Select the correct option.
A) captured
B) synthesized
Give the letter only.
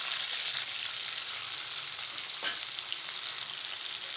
A